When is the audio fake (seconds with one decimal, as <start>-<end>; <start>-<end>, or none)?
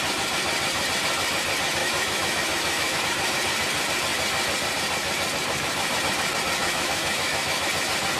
1.8-3.0; 6.6-7.7